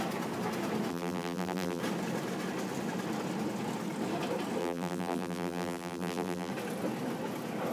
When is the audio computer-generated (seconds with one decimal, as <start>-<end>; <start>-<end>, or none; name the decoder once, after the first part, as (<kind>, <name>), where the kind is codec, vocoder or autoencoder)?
0.9-1.8 (vocoder, BigVGAN v2); 4.6-6.5